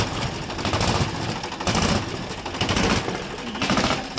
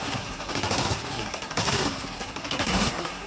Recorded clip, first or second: first